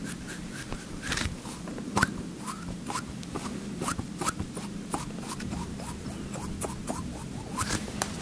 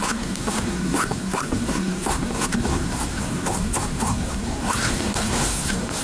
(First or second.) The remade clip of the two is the second